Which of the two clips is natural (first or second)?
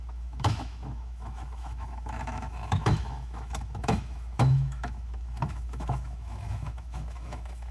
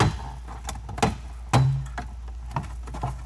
second